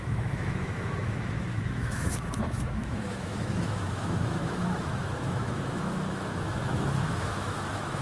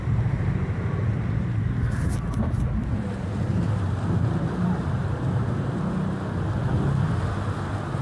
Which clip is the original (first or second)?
second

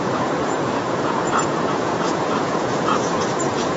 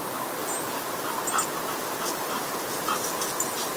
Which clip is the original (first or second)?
second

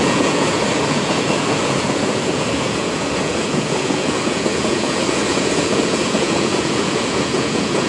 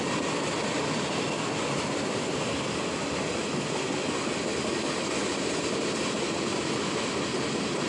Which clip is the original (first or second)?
second